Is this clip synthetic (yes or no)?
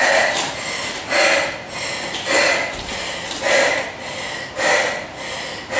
no